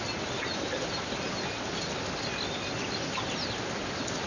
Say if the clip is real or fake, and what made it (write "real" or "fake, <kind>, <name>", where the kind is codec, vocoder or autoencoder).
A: real